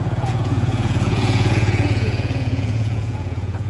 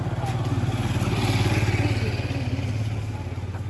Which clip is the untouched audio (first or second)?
second